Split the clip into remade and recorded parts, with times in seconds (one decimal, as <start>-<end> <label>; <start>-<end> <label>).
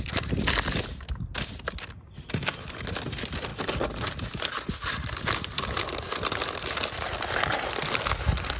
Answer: 0.0-8.6 recorded